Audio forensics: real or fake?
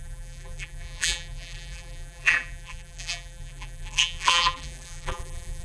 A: fake